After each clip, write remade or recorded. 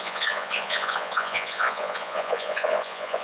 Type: remade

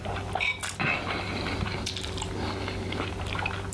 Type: recorded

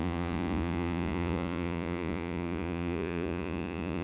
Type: remade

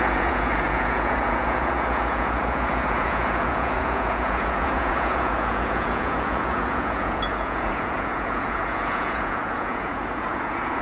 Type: remade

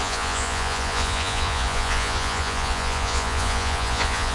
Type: remade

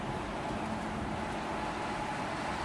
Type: recorded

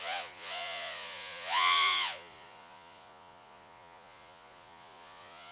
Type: remade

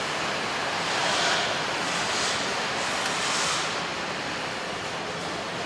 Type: recorded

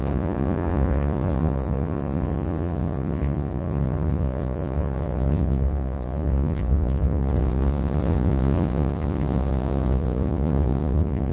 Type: remade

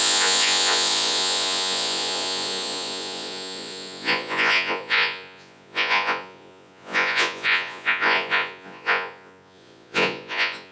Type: remade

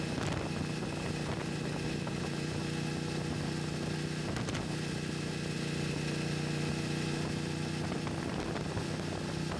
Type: recorded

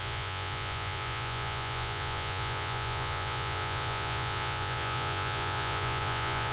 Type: remade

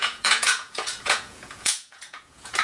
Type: remade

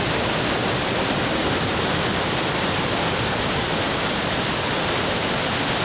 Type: recorded